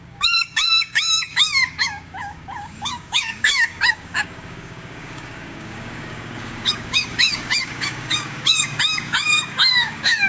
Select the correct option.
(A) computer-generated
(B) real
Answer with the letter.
A